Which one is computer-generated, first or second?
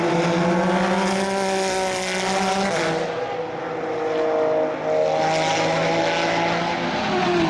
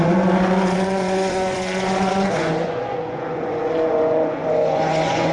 second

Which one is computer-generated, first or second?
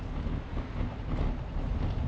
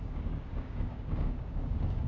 second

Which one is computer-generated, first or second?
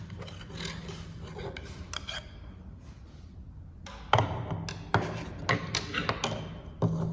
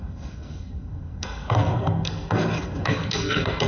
second